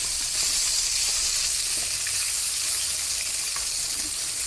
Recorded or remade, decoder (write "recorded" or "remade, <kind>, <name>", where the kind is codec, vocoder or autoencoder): recorded